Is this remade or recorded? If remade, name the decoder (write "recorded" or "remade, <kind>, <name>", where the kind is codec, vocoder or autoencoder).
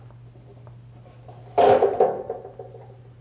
recorded